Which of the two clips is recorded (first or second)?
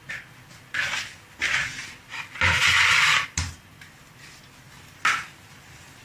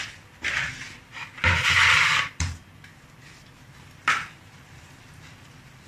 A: first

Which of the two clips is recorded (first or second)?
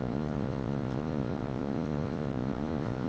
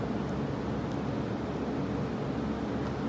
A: second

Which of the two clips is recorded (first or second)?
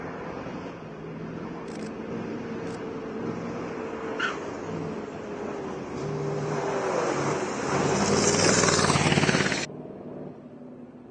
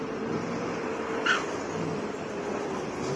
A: first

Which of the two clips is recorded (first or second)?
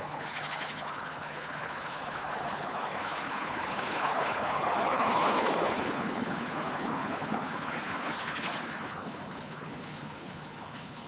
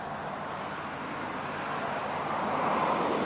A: second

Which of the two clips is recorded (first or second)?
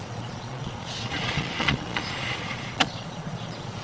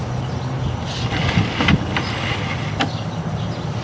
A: second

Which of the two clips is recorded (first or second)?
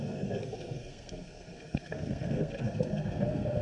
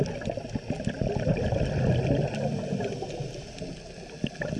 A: second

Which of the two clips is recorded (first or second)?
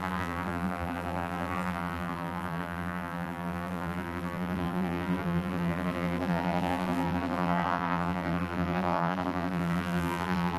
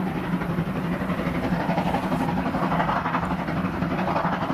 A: second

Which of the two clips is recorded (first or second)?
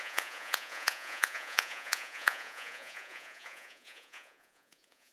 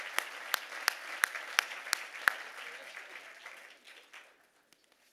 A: second